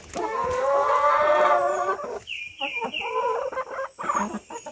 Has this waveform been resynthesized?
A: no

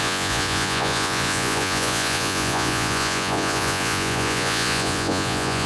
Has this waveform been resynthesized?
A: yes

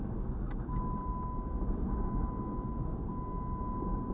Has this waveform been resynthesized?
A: no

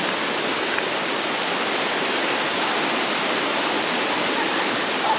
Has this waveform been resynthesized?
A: no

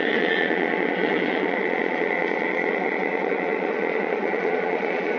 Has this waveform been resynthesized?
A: yes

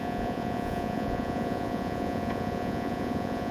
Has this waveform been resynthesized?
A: yes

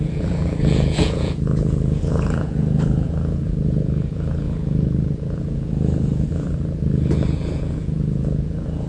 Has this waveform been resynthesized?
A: yes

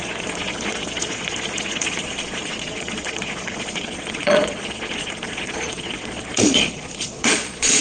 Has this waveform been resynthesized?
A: yes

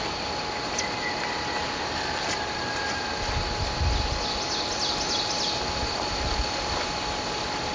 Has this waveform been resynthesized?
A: no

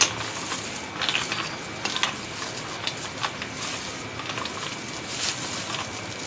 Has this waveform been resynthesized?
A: no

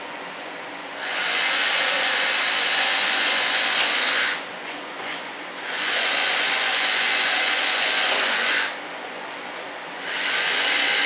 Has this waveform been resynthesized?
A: yes